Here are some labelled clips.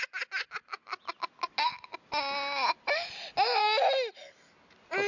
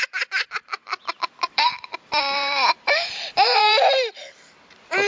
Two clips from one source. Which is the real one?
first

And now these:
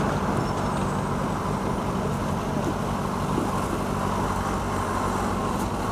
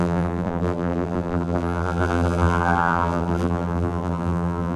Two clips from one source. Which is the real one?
first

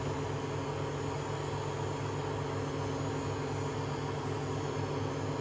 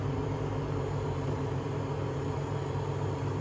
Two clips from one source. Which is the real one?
first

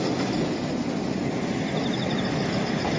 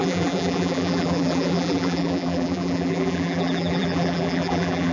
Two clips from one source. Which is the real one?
first